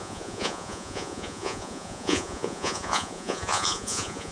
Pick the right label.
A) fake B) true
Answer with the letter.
A